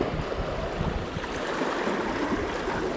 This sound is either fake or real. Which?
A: real